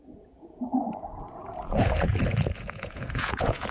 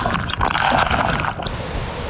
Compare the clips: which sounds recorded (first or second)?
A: second